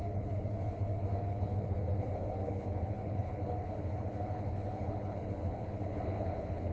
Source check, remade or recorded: remade